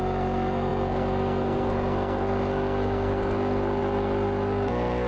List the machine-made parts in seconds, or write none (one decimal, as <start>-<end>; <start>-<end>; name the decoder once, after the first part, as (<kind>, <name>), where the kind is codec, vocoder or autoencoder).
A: 0.0-5.1 (codec, SNAC)